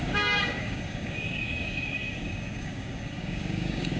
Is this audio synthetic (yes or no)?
yes